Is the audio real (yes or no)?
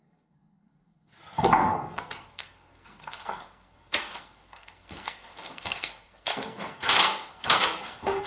no